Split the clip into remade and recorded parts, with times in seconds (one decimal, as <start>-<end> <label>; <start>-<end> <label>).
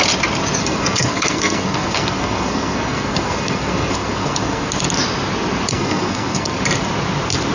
0.0-0.6 recorded; 0.6-4.7 remade; 4.7-5.7 recorded; 5.7-6.6 remade; 6.6-7.5 recorded